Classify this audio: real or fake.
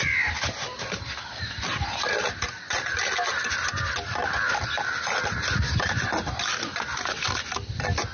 real